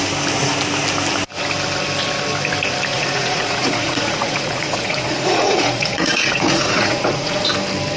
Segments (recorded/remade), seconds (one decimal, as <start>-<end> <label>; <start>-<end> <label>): 0.0-2.9 recorded; 2.9-7.4 remade; 7.4-8.0 recorded